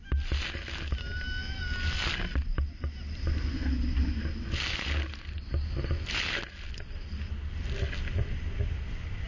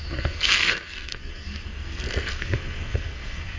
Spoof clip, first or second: second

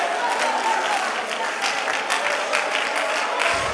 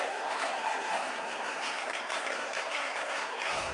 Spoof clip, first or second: second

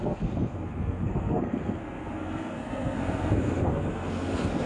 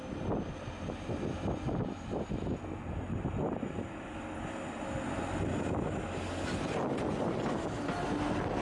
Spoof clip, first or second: first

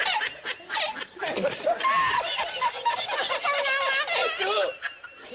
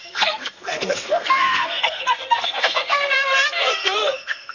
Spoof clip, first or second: second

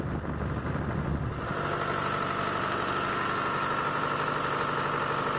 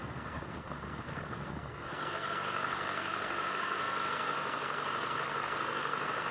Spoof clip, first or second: second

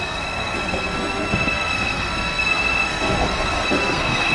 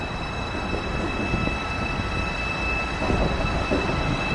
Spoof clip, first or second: first